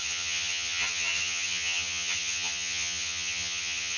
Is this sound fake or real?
fake